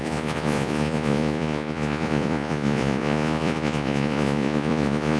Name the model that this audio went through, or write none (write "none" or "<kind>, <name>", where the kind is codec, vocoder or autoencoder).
vocoder, Vocos